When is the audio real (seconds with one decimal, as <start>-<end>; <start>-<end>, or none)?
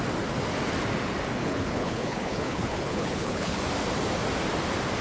0.0-1.4; 3.6-5.0